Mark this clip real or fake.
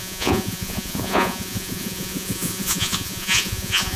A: fake